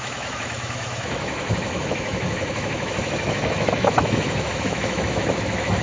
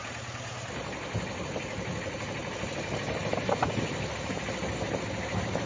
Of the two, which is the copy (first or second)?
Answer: first